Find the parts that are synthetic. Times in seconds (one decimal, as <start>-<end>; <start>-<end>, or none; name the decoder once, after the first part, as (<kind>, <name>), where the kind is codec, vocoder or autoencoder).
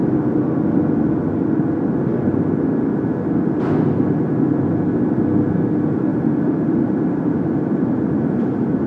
6.1-8.9 (vocoder, BigVGAN v2)